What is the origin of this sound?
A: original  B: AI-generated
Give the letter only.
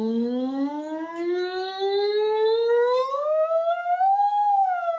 B